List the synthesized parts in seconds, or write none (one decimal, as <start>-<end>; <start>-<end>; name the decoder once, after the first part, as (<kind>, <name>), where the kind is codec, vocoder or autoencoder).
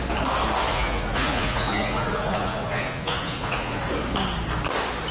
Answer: 0.7-3.8 (vocoder, Vocos)